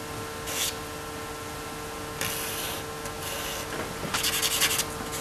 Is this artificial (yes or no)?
no